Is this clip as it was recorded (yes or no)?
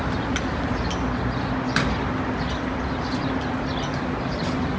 yes